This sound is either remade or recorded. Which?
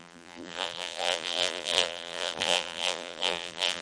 remade